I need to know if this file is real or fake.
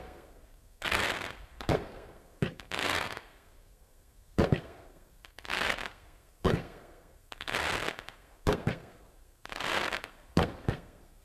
fake